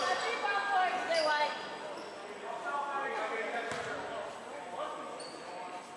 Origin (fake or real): real